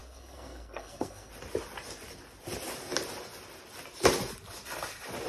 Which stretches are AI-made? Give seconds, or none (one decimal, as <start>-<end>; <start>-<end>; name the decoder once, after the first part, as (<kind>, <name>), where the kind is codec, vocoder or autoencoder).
0.0-1.3 (codec, SNAC)